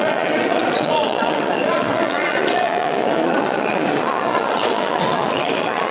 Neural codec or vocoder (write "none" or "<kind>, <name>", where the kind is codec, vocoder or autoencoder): vocoder, Vocos